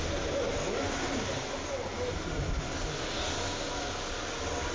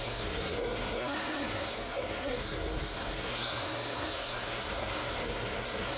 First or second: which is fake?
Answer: second